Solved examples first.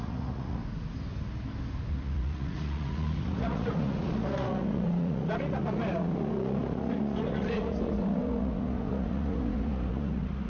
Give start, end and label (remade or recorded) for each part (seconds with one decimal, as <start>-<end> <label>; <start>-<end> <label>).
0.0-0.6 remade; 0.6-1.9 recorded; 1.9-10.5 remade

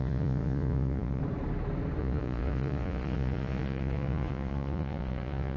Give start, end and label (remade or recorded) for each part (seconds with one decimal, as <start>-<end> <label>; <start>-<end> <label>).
0.0-1.2 remade; 1.2-2.0 recorded; 2.0-5.6 remade

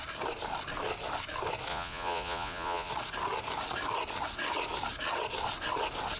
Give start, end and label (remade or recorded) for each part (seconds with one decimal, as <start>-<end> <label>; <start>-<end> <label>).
0.0-1.7 recorded; 1.7-2.9 remade; 2.9-6.2 recorded

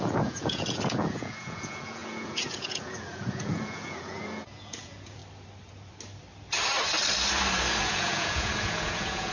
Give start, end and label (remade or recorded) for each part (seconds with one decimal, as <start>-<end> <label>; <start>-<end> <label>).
0.0-5.2 remade; 5.2-7.8 recorded; 7.8-9.3 remade

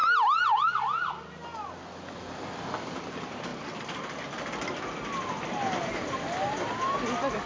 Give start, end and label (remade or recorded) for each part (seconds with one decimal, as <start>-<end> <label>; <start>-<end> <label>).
0.0-7.5 recorded